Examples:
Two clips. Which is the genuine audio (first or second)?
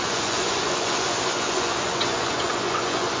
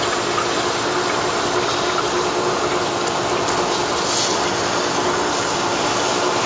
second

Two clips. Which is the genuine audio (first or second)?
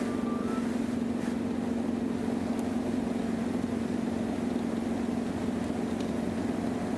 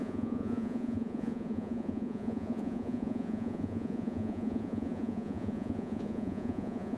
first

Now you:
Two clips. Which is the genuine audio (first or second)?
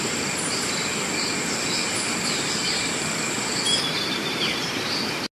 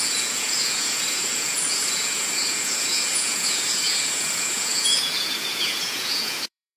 first